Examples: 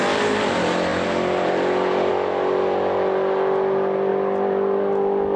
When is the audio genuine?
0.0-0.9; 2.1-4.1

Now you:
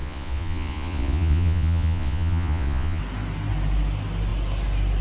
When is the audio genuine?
3.0-5.0

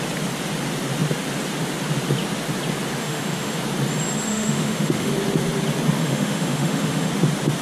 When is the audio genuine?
0.0-3.0; 3.6-4.3; 5.1-6.0; 7.1-7.6

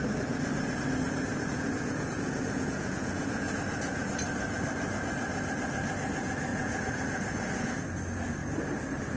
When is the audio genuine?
0.0-1.5; 4.0-6.5; 7.8-9.2

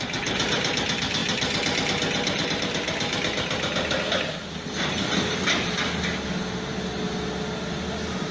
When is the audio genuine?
0.0-8.3

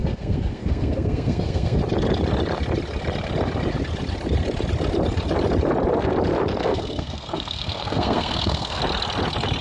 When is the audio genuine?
1.8-6.6; 8.8-9.6

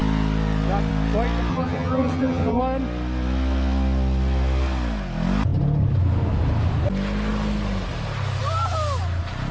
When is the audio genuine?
0.0-1.5; 2.6-9.5